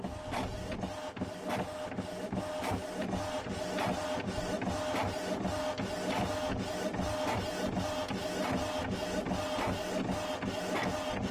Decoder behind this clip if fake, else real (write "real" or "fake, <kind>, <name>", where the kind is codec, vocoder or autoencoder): real